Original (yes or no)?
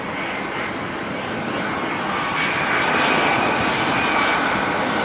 yes